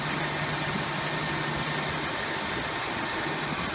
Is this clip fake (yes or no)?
no